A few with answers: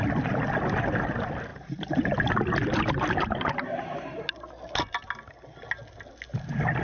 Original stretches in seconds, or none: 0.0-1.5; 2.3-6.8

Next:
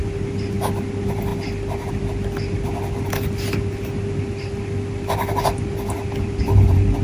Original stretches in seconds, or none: 0.0-7.0

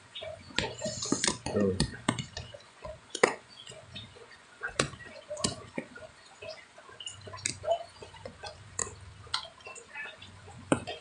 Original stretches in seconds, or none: 6.8-7.5; 8.8-9.9

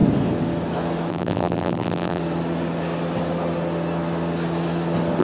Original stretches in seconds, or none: 0.0-1.1; 2.2-5.2

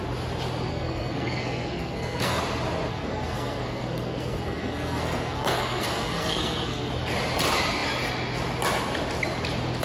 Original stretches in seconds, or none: 0.0-0.7; 2.4-2.9; 6.9-9.8

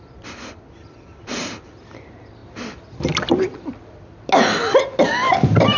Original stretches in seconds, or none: 0.0-5.8